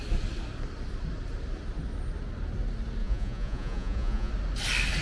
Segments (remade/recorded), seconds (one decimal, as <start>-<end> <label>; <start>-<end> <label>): 0.0-3.0 recorded; 3.0-4.3 remade; 4.3-5.0 recorded